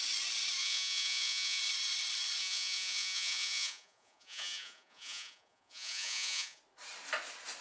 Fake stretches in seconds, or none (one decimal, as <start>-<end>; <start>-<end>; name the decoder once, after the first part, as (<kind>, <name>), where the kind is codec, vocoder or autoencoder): 0.6-1.6 (vocoder, Vocos); 2.4-6.6